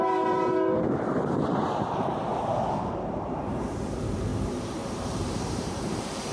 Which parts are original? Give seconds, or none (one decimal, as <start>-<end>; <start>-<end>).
2.3-3.1